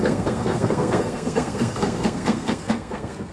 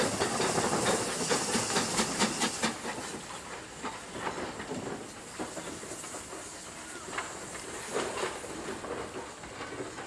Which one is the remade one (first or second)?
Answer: first